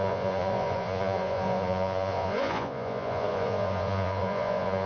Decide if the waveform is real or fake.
fake